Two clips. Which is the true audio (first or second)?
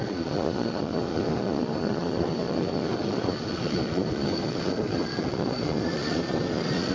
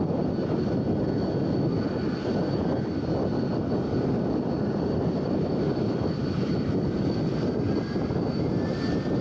second